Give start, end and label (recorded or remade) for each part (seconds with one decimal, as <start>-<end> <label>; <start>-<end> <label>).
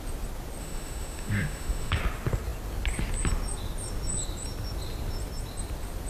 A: 0.0-0.6 recorded; 0.6-2.0 remade; 2.0-6.1 recorded